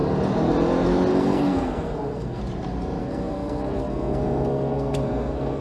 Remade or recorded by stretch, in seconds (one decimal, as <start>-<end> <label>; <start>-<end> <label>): 0.0-1.1 recorded; 1.1-2.4 remade; 2.4-3.0 recorded; 3.0-5.6 remade